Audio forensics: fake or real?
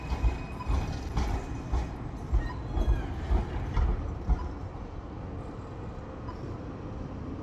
real